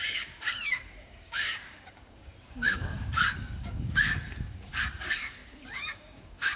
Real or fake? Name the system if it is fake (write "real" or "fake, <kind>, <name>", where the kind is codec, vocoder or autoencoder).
fake, codec, DAC